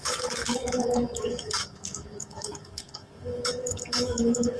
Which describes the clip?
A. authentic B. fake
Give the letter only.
B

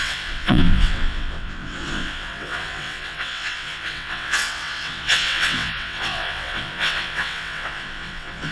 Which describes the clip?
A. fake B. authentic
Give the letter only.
A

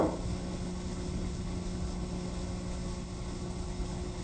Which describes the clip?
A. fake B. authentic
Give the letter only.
A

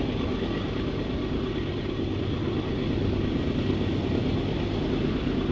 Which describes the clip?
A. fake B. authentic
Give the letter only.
B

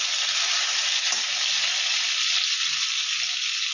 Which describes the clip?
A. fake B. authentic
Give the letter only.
B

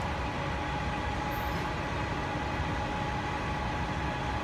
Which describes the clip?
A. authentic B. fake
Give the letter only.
A